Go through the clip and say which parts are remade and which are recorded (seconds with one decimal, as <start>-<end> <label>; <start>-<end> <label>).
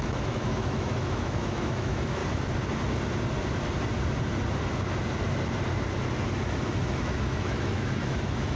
0.0-2.2 remade; 2.2-6.9 recorded; 6.9-8.6 remade